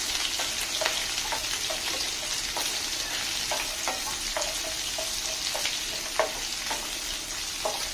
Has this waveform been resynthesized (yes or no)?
no